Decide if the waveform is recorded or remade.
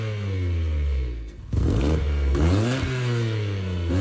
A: remade